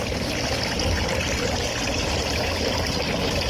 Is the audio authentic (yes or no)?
yes